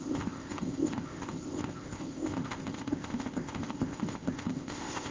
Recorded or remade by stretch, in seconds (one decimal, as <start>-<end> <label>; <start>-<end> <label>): 0.0-5.1 remade